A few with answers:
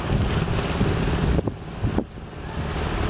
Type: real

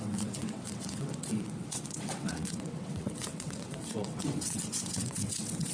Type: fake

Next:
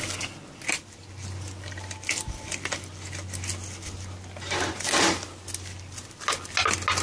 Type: real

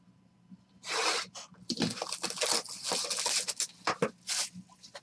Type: real